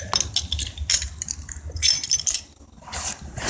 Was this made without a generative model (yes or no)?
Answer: yes